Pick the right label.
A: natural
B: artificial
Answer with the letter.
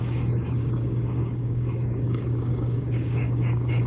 B